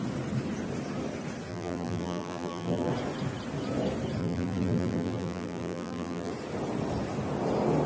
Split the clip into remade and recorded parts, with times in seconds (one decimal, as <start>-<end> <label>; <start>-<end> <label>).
0.0-1.5 recorded; 1.5-2.9 remade; 2.9-4.2 recorded; 4.2-6.3 remade; 6.3-7.9 recorded